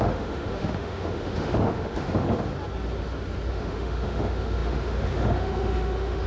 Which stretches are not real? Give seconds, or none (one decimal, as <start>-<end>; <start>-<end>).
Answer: 0.0-2.5; 3.5-6.3